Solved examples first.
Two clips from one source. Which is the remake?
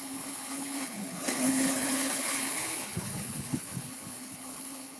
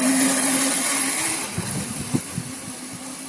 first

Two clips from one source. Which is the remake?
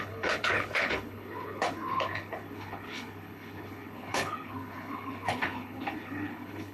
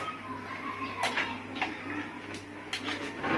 first